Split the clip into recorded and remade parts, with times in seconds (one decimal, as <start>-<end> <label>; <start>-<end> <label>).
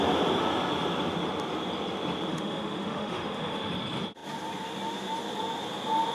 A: 0.0-2.3 recorded; 2.3-3.7 remade; 3.7-6.1 recorded